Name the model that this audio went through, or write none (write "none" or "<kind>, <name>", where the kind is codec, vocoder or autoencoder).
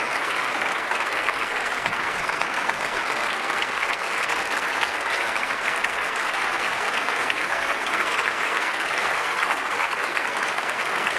codec, SNAC